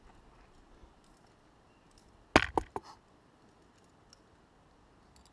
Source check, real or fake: real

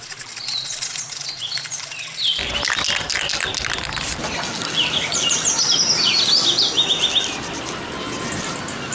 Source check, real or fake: real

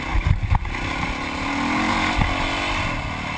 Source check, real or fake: real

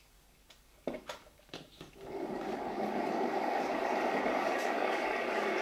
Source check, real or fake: fake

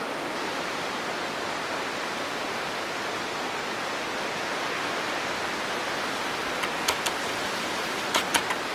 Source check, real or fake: real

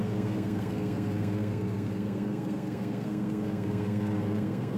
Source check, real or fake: fake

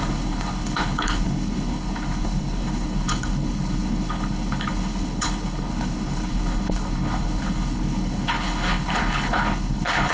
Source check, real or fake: fake